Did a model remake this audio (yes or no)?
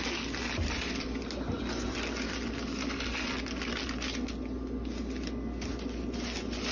no